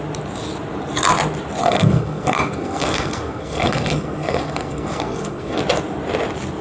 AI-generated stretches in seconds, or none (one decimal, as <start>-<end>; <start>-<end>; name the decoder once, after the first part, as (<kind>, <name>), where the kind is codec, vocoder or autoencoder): 1.6-5.6 (codec, SNAC)